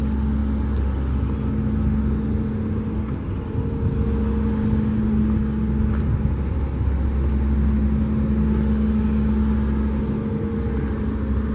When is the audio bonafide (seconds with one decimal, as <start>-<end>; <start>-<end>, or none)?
0.0-11.5